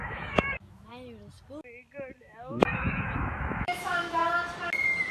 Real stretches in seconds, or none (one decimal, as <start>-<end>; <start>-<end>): 0.9-2.2; 4.2-5.1